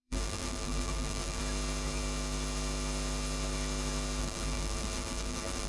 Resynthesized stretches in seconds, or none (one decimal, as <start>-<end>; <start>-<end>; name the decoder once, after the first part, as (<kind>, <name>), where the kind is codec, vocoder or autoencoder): 0.0-1.4 (vocoder, BigVGAN v2); 4.2-5.7